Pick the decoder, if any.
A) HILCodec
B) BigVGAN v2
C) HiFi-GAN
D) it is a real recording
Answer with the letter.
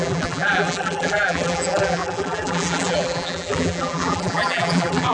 B